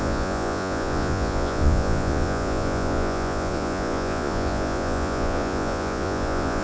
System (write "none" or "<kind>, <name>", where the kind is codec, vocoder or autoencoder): vocoder, Vocos